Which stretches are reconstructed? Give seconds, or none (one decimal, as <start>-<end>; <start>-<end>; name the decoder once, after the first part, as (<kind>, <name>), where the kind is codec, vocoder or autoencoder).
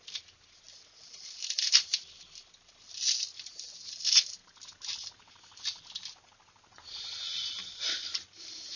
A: none